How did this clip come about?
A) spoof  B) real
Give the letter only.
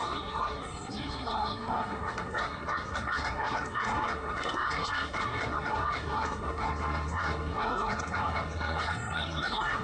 A